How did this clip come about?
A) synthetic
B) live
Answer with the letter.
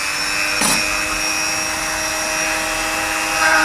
B